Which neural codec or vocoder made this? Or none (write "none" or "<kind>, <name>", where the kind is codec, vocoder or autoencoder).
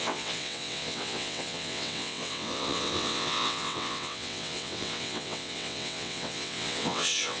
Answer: vocoder, WaveNeXt